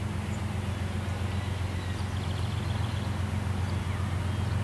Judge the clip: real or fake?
real